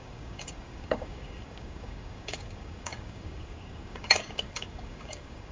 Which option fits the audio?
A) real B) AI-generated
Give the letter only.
B